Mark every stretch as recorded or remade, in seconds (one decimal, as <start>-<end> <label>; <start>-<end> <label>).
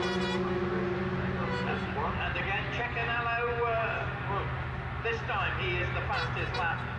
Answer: 0.0-7.0 recorded